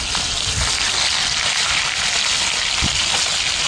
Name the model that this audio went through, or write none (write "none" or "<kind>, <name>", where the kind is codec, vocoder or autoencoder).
none